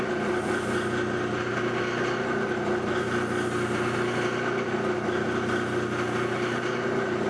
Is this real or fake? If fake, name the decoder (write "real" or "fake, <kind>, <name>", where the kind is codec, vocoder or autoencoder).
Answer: real